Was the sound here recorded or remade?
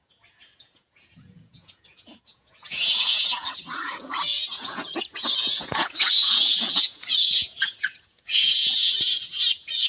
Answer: remade